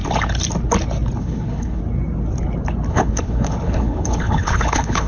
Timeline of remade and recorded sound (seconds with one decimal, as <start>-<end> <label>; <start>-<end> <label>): 0.0-1.2 recorded; 1.2-1.8 remade; 1.8-2.9 recorded; 2.9-5.1 remade